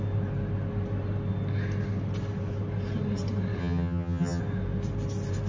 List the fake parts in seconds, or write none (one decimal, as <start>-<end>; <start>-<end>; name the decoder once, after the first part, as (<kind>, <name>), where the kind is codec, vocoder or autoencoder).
3.6-4.4 (vocoder, HiFi-GAN)